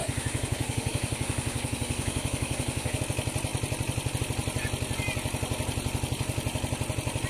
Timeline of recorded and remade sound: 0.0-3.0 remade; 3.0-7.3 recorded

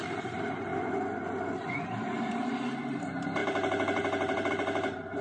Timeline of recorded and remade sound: 0.0-0.7 remade; 0.7-2.3 recorded; 2.3-5.2 remade

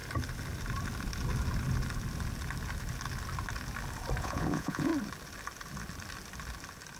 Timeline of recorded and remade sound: 0.0-4.2 recorded; 4.2-4.9 remade; 4.9-7.0 recorded

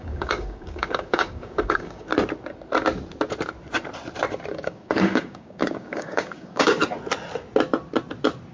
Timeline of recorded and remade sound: 0.0-2.1 remade; 2.1-4.5 recorded; 4.5-6.8 remade; 6.8-8.5 recorded

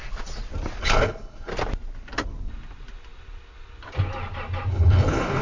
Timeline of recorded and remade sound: 0.0-0.8 recorded; 0.8-1.5 remade; 1.5-4.7 recorded; 4.7-5.4 remade

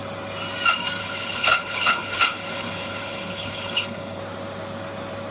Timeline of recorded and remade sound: 0.0-1.0 recorded; 1.0-4.2 remade; 4.2-5.3 recorded